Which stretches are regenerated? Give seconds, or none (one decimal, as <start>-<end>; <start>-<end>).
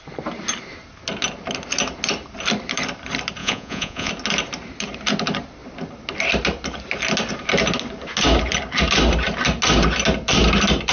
3.4-4.1